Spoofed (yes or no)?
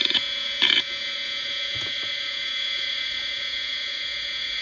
yes